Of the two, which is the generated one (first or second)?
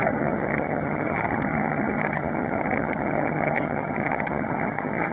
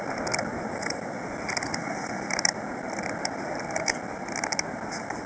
first